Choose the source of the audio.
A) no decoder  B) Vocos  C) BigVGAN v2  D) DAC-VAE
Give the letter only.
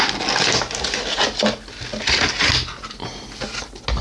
A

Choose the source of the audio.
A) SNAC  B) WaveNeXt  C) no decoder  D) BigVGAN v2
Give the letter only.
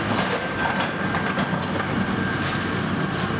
C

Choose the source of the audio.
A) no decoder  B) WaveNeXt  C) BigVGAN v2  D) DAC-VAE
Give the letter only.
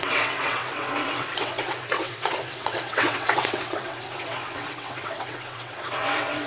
B